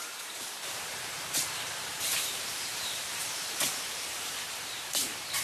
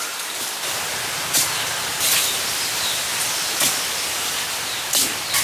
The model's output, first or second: first